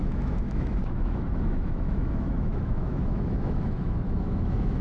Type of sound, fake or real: fake